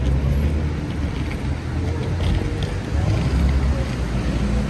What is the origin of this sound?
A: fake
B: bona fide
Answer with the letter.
B